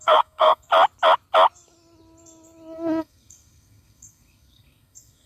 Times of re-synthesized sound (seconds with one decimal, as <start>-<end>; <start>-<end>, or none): 0.0-0.7; 3.0-5.3